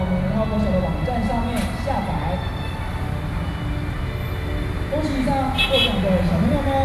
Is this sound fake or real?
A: real